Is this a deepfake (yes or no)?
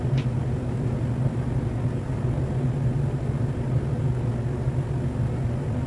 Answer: no